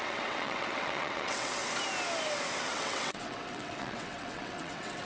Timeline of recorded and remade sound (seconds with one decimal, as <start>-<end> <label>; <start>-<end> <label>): 0.0-1.6 remade; 1.6-2.7 recorded; 2.7-5.1 remade